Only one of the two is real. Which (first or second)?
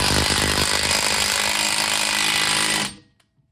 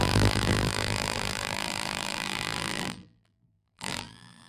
first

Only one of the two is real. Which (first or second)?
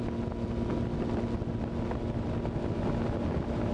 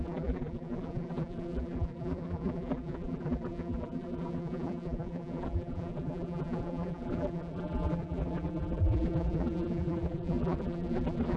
first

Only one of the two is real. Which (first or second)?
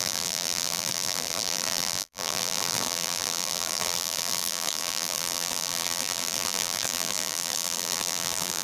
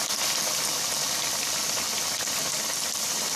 second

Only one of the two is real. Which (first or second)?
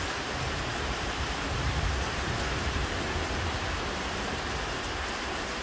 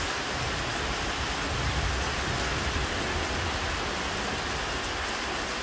second